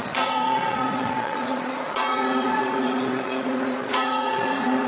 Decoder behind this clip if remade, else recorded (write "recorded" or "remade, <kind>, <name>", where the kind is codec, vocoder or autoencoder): remade, vocoder, Vocos